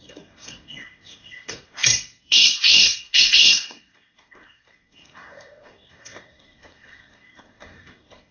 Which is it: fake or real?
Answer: fake